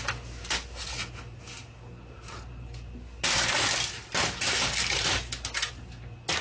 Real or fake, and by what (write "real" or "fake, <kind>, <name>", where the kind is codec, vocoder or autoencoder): real